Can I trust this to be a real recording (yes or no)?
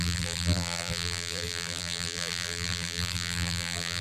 no